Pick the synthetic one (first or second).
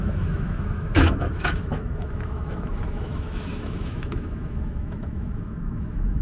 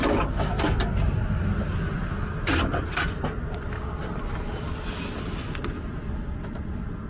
first